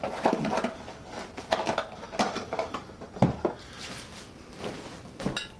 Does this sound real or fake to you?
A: real